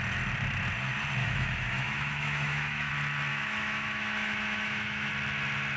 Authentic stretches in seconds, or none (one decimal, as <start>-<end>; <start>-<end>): 0.0-1.2; 2.9-3.3; 5.1-5.8